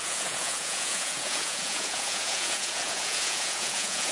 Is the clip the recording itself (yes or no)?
no